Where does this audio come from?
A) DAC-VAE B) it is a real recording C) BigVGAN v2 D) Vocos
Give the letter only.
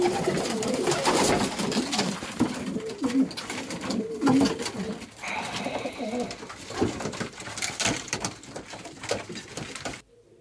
C